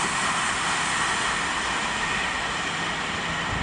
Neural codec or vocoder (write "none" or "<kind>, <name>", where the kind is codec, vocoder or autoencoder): none